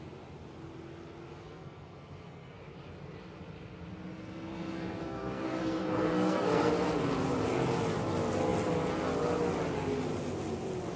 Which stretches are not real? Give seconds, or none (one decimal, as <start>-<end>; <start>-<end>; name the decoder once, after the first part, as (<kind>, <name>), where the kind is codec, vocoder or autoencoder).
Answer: 1.4-2.6 (codec, SNAC); 4.1-6.7